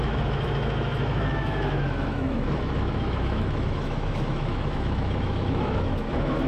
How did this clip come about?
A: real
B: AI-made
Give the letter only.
B